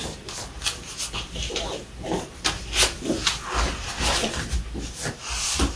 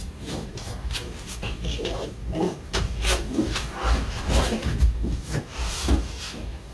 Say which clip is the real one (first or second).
first